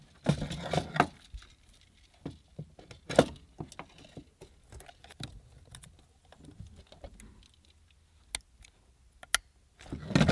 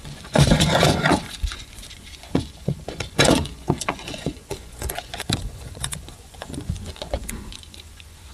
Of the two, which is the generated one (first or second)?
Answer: second